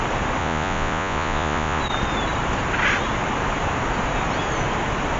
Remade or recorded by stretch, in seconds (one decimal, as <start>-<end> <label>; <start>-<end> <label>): 0.0-0.4 recorded; 0.4-1.8 remade; 1.8-5.2 recorded